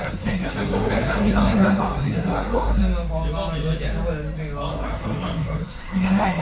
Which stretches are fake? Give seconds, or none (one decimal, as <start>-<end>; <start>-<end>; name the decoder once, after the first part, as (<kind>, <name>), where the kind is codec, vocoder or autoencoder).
0.0-2.8 (codec, SNAC); 4.7-6.4